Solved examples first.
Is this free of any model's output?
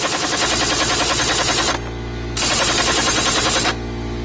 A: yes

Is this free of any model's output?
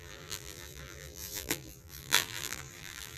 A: no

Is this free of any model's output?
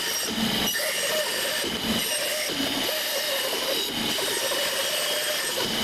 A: yes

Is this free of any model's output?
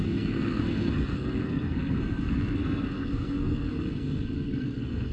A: no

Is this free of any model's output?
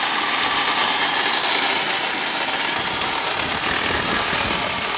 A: yes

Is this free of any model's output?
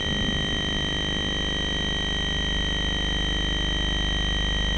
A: yes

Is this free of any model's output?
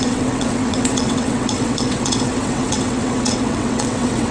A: no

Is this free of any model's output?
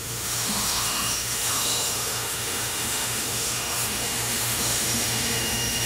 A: no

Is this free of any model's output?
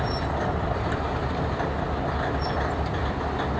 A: yes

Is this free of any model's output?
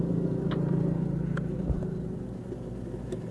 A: yes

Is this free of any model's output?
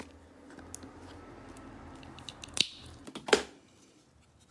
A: yes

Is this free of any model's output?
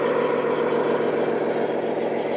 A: yes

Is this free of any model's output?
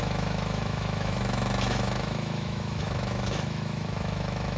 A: no